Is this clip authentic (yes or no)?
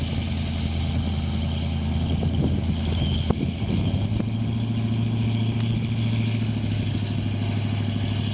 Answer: yes